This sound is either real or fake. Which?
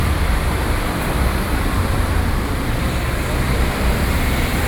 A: fake